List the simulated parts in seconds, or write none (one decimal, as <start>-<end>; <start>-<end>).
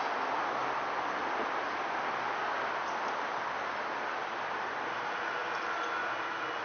none